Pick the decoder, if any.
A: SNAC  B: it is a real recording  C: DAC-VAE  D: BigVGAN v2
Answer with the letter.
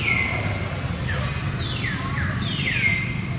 B